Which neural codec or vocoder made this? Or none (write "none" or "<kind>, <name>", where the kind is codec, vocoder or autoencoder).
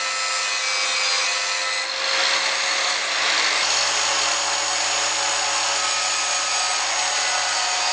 none